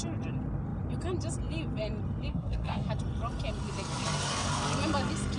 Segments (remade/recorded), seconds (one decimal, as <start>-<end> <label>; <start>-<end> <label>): 0.0-2.3 recorded; 2.3-2.9 remade; 2.9-5.4 recorded